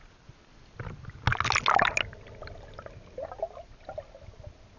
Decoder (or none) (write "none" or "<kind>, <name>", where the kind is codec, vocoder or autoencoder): none